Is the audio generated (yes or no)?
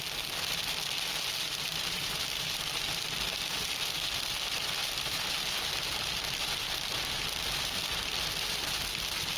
no